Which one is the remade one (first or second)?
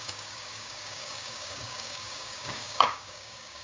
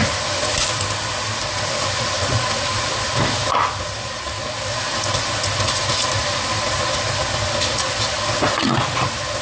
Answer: first